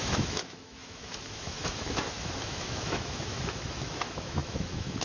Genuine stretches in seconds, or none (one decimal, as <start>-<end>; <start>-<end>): none